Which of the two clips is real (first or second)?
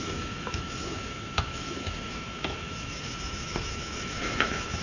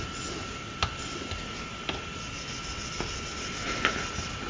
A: second